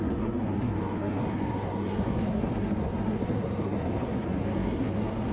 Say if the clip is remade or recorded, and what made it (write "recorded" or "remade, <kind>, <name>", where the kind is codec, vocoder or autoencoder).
remade, codec, SNAC